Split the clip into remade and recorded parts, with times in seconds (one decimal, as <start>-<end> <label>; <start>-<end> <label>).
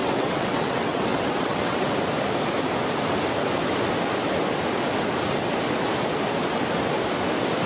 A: 0.0-1.9 remade; 1.9-7.7 recorded